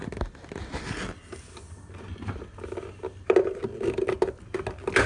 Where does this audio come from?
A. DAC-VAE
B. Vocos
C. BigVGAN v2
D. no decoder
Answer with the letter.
D